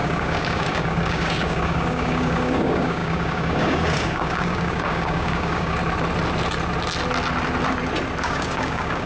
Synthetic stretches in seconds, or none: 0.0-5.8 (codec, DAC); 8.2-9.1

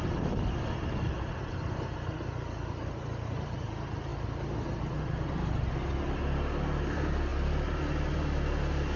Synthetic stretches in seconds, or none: none